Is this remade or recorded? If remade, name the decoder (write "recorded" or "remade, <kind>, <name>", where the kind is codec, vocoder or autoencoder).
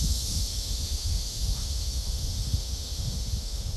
remade, autoencoder, DAC-VAE